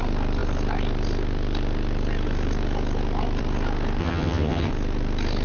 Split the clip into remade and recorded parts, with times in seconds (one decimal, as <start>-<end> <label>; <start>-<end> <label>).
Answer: 0.0-4.0 recorded; 4.0-4.7 remade; 4.7-5.4 recorded